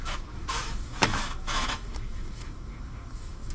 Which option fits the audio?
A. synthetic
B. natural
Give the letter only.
A